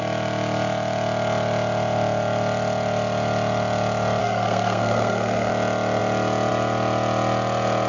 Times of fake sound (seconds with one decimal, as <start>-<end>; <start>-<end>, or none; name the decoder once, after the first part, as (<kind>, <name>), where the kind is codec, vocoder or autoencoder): 4.2-5.5 (codec, SNAC)